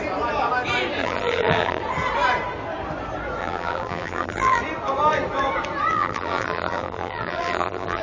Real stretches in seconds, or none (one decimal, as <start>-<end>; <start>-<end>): 0.0-1.0; 1.8-3.4; 4.6-5.9